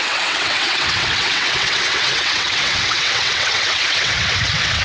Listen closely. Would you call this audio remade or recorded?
remade